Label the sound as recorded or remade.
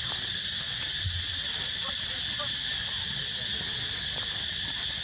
recorded